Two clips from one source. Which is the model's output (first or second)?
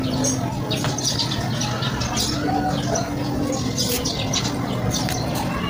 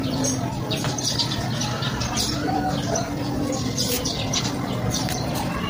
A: second